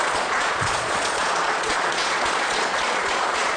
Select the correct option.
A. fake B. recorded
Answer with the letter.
A